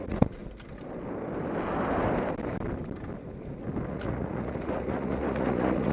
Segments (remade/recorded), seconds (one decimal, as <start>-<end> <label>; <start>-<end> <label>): 0.0-0.4 remade; 0.4-3.9 recorded; 3.9-5.9 remade